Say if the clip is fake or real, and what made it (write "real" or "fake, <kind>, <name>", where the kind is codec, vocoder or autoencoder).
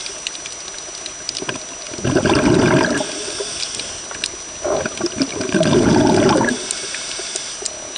real